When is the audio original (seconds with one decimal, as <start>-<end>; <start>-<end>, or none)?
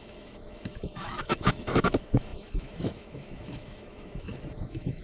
none